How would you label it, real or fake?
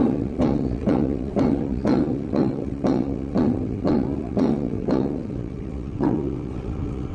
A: fake